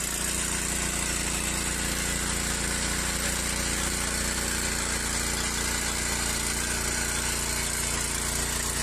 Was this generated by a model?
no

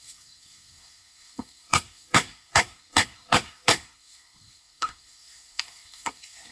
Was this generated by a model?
yes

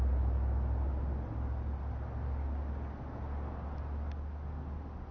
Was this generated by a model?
no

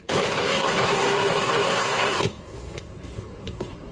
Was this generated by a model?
yes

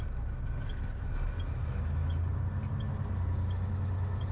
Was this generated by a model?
no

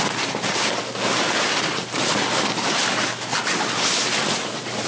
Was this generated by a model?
no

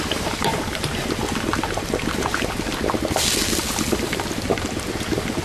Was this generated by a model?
yes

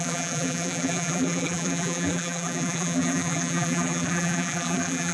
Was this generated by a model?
yes